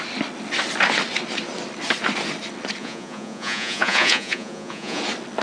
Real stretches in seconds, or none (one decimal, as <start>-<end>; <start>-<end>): 0.0-2.8; 5.0-5.4